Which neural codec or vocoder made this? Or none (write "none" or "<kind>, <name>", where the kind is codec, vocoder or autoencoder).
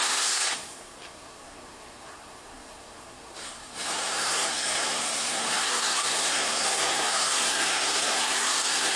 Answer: codec, SNAC